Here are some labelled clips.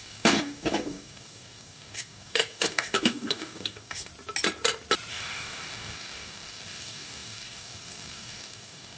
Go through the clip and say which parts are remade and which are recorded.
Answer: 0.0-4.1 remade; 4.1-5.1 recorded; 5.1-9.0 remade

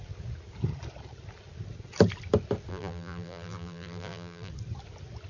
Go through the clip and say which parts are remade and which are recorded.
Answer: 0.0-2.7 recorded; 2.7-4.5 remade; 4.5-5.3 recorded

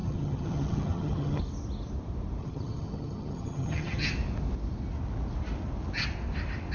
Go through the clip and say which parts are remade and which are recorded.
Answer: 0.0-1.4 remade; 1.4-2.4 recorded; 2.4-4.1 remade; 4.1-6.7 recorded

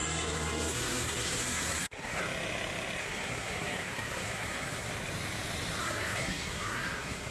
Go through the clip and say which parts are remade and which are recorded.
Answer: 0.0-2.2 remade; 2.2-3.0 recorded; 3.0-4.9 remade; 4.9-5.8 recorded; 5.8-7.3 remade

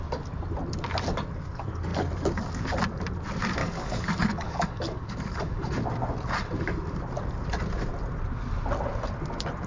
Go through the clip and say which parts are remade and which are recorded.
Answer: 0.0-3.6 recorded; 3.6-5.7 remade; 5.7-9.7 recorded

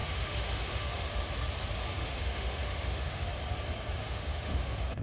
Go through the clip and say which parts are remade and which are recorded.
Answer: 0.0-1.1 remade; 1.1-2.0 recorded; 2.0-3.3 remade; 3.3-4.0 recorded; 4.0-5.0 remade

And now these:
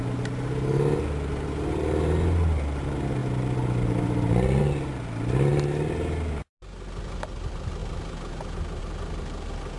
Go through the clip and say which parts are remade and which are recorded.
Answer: 0.0-9.8 recorded